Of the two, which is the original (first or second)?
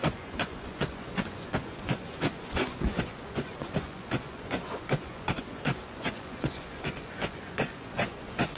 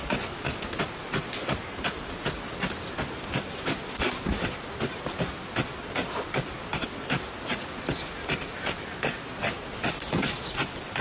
second